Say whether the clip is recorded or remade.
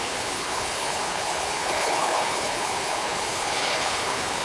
remade